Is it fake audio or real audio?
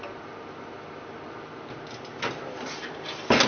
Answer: real